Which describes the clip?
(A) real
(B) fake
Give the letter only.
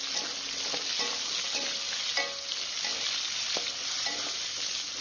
A